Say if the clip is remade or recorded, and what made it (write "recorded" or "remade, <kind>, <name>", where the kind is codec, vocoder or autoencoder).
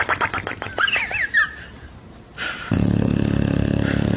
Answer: recorded